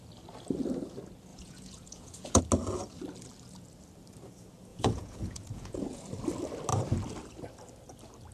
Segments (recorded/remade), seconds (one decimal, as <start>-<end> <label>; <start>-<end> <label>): 0.0-1.3 recorded; 1.3-2.4 remade; 2.4-4.7 recorded; 4.7-6.0 remade; 6.0-8.3 recorded